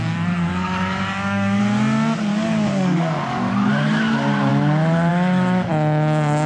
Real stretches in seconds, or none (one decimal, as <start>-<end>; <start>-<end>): 0.0-0.5; 1.6-2.3; 3.7-6.5